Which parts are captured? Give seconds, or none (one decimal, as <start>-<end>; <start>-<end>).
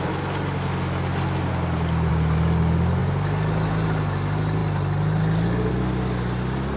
0.0-3.0; 3.7-6.8